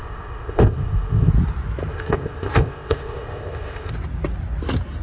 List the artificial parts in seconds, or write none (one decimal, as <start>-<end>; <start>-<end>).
0.0-1.3; 1.9-3.9